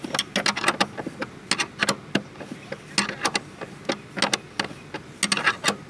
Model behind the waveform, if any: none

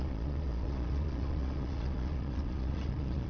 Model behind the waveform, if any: vocoder, Vocos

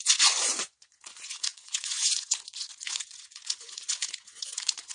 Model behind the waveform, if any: vocoder, Vocos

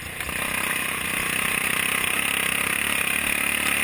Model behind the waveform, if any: none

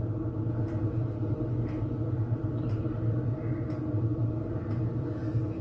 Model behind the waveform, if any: none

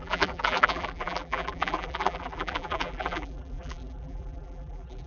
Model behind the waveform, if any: vocoder, BigVGAN v2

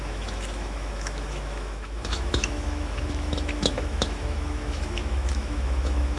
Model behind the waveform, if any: autoencoder, DAC-VAE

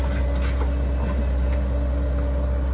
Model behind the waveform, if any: none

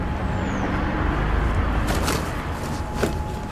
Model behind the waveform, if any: vocoder, BigVGAN v2